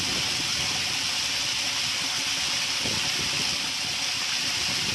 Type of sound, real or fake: real